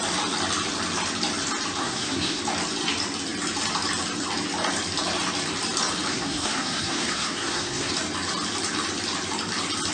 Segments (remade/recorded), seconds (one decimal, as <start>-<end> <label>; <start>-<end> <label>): 0.0-1.8 recorded; 1.8-2.4 remade; 2.4-6.1 recorded; 6.1-7.9 remade; 7.9-9.9 recorded